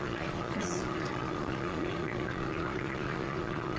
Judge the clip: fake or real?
fake